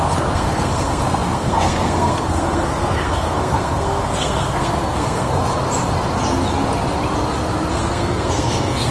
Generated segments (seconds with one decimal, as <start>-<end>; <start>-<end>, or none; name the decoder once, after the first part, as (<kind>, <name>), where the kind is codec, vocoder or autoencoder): 0.0-5.4 (codec, SNAC); 7.7-8.9

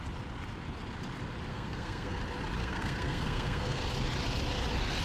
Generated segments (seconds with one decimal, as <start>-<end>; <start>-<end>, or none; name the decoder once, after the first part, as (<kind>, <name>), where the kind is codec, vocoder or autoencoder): 1.5-2.2 (codec, SNAC); 2.6-3.8

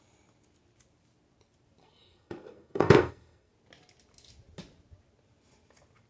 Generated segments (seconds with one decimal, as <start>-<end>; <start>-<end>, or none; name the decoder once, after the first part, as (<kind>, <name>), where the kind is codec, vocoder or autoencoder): 1.8-3.5 (codec, SNAC)

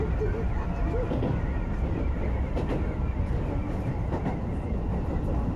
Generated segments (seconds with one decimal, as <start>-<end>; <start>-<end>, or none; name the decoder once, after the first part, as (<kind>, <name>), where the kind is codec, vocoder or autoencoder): none